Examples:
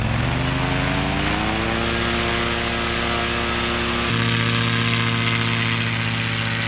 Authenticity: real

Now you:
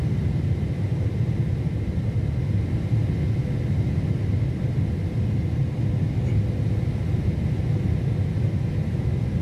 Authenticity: real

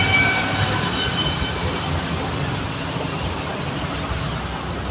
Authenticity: real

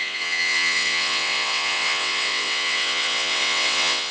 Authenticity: fake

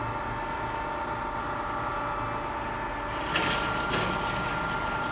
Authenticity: real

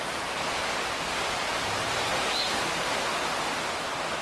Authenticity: real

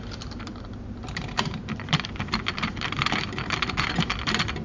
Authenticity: fake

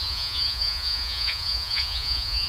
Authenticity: fake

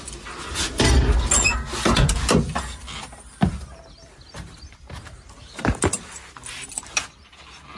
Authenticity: real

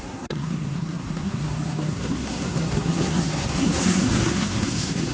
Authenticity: fake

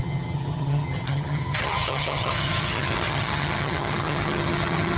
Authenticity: fake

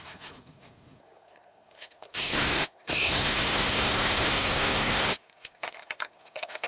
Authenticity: fake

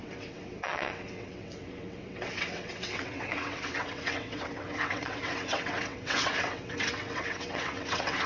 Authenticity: fake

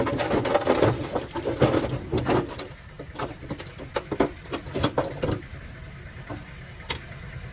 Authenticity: real